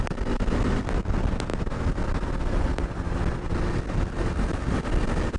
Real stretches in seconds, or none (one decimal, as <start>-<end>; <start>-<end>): 0.0-5.4